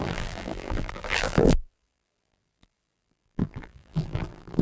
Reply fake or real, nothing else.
fake